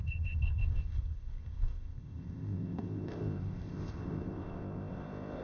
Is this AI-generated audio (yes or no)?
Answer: yes